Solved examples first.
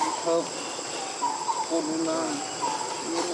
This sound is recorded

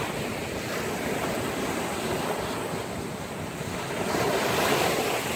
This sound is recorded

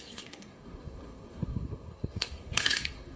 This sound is remade